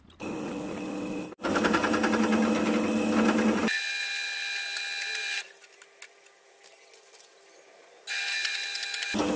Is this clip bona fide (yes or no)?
yes